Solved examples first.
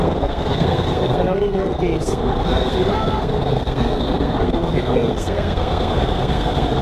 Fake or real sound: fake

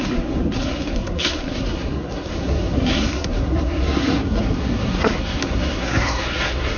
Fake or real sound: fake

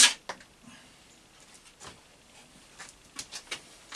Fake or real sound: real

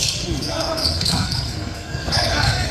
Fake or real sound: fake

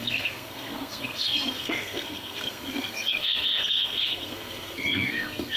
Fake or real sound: fake